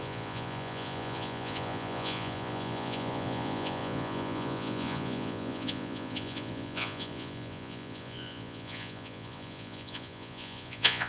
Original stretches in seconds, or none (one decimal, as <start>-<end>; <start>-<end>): none